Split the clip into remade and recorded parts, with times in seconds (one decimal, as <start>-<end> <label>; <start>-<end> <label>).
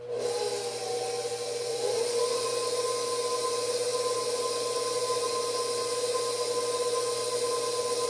0.0-1.7 recorded; 1.7-2.5 remade; 2.5-8.1 recorded